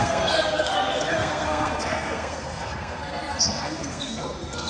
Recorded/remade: remade